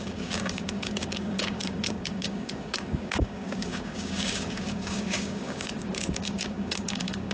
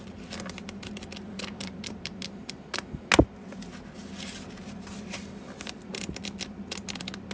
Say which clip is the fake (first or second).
first